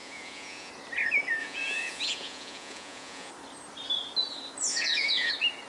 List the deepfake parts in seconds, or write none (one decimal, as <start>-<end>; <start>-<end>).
0.0-0.7; 1.4-3.3; 4.7-5.3